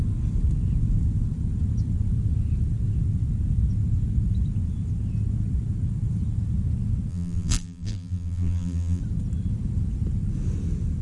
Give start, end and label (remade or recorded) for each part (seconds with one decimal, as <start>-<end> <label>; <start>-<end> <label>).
0.0-7.1 recorded; 7.1-9.0 remade; 9.0-11.0 recorded

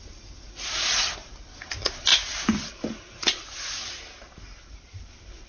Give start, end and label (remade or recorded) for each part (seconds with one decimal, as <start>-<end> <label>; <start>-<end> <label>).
0.0-5.5 recorded